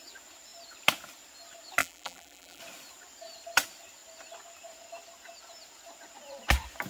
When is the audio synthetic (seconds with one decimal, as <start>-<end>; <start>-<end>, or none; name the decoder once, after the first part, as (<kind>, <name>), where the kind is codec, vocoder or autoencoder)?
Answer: 1.8-2.6 (vocoder, BigVGAN v2)